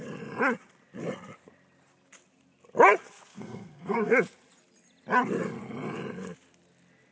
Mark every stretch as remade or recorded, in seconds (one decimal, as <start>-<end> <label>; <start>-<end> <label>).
0.0-3.3 recorded; 3.3-4.1 remade; 4.1-7.1 recorded